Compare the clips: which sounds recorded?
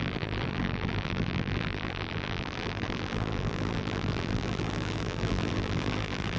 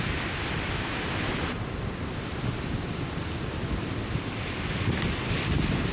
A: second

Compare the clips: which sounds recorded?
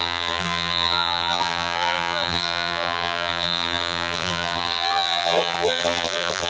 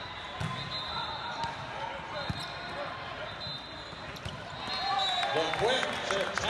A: second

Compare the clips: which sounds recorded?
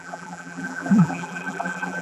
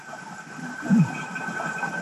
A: second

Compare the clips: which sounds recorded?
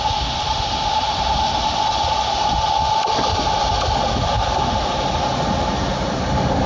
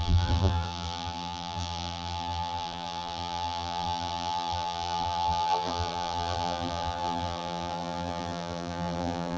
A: first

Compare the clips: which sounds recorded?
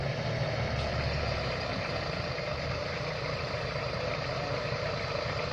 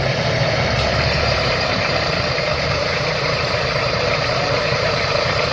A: first